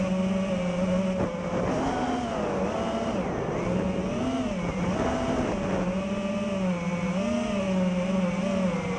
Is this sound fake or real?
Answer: real